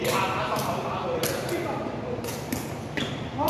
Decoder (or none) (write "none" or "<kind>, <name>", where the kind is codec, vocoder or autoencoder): none